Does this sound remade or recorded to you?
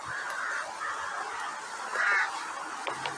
recorded